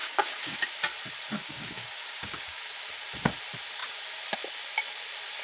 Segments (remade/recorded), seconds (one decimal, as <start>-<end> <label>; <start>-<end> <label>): 0.0-0.6 remade; 0.6-1.4 recorded; 1.4-2.6 remade; 2.6-5.4 recorded